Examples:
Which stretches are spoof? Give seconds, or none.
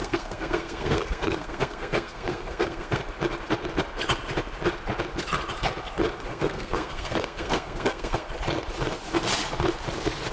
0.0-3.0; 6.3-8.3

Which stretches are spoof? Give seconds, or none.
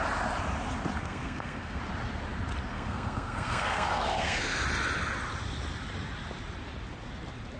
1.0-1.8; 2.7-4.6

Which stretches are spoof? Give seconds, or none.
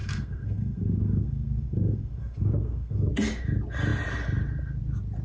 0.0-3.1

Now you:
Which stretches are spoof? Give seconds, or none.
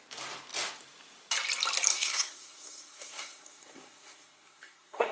1.9-5.1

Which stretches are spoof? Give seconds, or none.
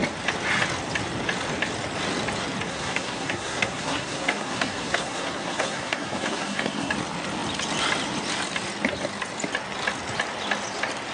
2.7-6.9